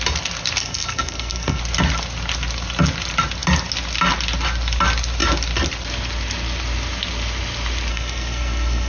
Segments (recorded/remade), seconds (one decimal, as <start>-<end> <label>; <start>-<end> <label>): 0.0-0.6 recorded; 0.6-1.6 remade; 1.6-7.9 recorded; 7.9-8.9 remade